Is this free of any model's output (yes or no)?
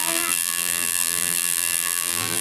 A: no